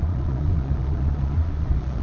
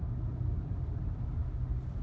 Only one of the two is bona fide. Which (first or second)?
second